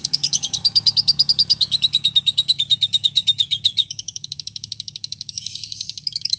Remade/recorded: remade